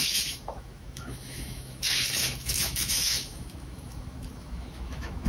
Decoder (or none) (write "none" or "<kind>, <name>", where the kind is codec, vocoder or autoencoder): autoencoder, DAC-VAE